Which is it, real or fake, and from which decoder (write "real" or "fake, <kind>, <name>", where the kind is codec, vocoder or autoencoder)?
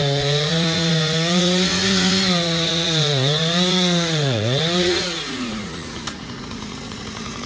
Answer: fake, vocoder, Vocos